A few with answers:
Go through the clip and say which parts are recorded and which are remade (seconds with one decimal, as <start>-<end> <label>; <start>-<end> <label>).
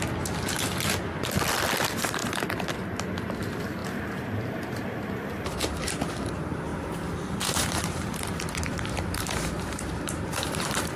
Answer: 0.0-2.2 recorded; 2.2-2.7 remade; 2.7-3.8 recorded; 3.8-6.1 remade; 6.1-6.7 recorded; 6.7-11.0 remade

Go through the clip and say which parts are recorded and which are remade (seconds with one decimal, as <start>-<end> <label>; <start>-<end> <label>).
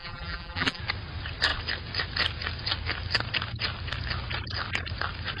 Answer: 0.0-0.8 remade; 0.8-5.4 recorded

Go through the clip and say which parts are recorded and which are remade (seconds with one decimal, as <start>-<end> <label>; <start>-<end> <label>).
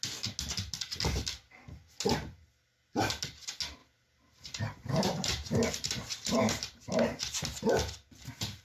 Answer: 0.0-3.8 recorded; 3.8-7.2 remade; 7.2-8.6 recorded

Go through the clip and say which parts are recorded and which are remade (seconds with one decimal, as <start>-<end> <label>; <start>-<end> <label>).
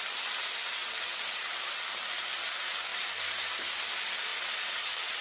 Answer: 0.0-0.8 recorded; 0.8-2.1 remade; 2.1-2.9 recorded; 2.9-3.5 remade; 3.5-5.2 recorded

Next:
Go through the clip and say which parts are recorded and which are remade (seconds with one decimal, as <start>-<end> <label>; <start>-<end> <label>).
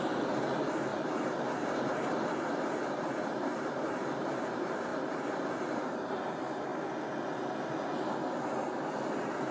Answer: 0.0-4.9 remade; 4.9-5.4 recorded; 5.4-6.7 remade; 6.7-9.5 recorded